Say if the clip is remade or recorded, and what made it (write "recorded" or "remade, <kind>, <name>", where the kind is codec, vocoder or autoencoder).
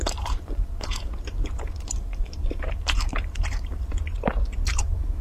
remade, vocoder, BigVGAN v2